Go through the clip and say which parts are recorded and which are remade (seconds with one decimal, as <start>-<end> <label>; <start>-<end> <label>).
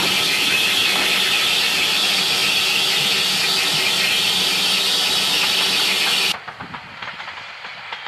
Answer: 0.0-8.1 recorded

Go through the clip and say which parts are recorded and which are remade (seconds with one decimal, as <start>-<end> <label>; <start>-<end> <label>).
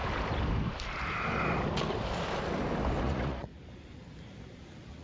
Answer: 0.0-3.0 recorded; 3.0-3.5 remade; 3.5-5.0 recorded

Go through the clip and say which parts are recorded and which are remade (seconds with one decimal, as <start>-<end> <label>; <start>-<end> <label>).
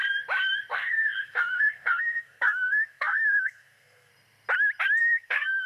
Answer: 0.0-0.7 recorded; 0.7-4.1 remade; 4.1-5.0 recorded; 5.0-5.7 remade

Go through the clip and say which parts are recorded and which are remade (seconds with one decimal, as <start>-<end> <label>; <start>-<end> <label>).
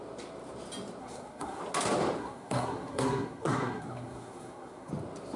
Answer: 0.0-1.0 recorded; 1.0-1.6 remade; 1.6-2.2 recorded; 2.2-4.9 remade; 4.9-5.4 recorded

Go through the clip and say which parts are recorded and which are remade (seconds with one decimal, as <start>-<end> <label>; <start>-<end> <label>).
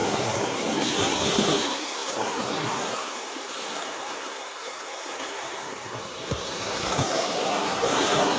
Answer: 0.0-8.4 remade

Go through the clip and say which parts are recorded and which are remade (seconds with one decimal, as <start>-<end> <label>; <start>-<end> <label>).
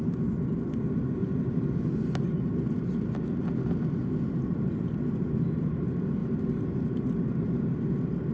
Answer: 0.0-8.3 recorded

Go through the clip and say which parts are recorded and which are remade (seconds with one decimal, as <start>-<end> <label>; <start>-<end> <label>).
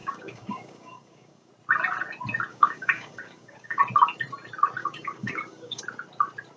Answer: 0.0-1.5 remade; 1.5-2.5 recorded; 2.5-3.8 remade; 3.8-4.8 recorded; 4.8-5.8 remade; 5.8-6.6 recorded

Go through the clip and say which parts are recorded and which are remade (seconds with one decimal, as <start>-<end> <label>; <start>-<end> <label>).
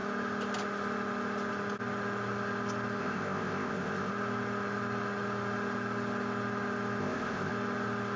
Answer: 0.0-3.0 recorded; 3.0-4.1 remade; 4.1-7.0 recorded; 7.0-7.5 remade; 7.5-8.2 recorded